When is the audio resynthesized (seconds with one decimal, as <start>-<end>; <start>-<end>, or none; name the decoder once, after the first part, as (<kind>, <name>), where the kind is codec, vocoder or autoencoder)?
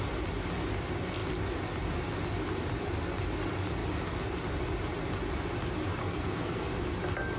6.0-6.7 (codec, SNAC)